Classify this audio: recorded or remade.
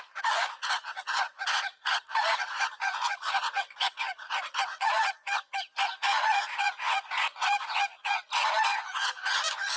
remade